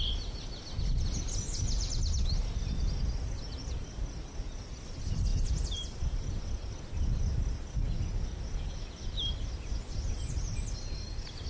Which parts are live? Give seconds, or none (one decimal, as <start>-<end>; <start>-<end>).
0.0-11.5